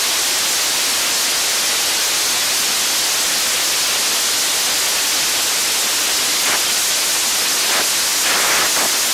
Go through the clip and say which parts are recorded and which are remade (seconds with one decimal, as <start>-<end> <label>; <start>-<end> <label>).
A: 0.0-9.1 recorded